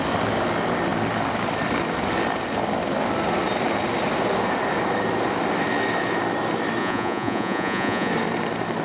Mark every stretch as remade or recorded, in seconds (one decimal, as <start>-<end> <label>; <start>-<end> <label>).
0.0-6.8 recorded; 6.8-8.1 remade; 8.1-8.8 recorded